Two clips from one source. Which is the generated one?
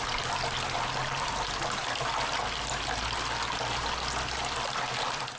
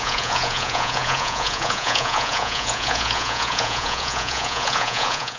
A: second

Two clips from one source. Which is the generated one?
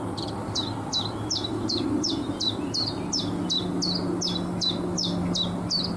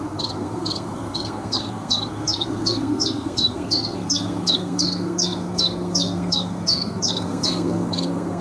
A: second